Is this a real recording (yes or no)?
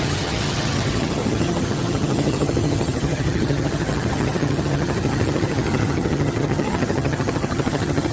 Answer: no